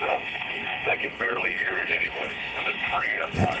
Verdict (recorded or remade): remade